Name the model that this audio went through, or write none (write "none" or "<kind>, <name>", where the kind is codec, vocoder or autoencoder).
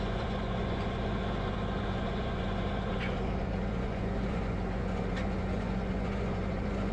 vocoder, Vocos